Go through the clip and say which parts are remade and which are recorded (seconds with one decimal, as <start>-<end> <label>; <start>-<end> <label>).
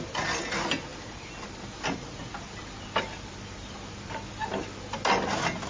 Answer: 0.0-5.7 recorded